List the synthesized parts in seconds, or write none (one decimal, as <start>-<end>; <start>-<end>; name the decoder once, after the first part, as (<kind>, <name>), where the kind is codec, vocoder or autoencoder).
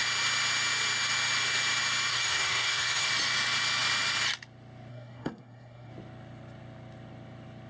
2.1-3.1 (codec, SNAC); 4.9-5.9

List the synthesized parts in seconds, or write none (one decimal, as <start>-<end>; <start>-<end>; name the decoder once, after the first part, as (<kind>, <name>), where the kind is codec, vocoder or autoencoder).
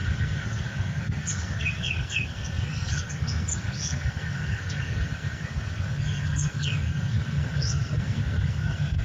0.0-9.0 (codec, SNAC)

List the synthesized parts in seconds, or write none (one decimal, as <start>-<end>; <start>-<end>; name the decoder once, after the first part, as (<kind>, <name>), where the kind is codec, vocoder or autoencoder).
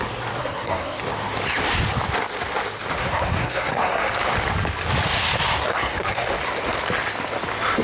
0.4-1.0 (codec, SNAC); 3.0-4.1; 5.7-6.3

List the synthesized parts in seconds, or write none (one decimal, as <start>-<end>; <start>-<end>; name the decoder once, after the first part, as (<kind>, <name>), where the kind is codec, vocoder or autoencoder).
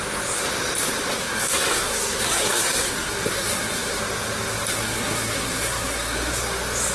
1.2-4.0 (codec, SNAC); 4.7-6.3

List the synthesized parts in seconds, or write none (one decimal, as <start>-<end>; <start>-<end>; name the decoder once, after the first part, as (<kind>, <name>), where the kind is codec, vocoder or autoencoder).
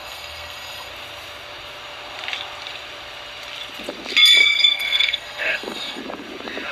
0.0-0.9 (codec, SNAC); 4.4-6.0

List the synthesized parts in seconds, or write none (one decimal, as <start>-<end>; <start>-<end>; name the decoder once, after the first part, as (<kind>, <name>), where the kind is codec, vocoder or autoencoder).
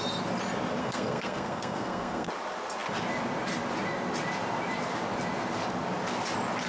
0.8-2.3 (codec, SNAC)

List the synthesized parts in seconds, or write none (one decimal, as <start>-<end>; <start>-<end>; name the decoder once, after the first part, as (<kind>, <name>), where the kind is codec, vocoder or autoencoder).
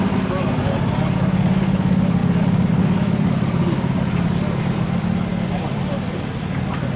none